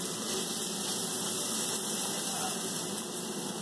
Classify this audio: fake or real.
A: real